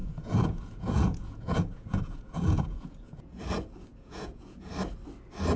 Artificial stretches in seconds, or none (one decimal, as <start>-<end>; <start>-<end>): 0.0-3.4; 3.9-4.7